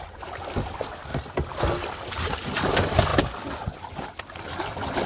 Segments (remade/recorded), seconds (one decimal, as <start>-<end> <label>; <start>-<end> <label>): 0.0-5.1 recorded